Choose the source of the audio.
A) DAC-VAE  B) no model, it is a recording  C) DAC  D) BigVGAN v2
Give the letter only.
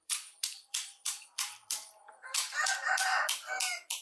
D